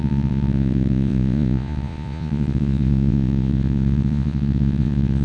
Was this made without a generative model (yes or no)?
no